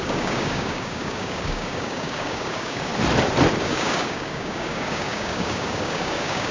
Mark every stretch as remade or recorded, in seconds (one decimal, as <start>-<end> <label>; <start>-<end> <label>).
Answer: 0.0-2.9 remade; 2.9-3.6 recorded; 3.6-6.5 remade